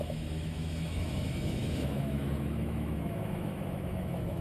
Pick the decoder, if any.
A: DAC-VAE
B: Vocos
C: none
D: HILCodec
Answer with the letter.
A